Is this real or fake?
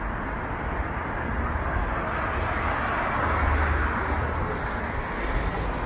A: real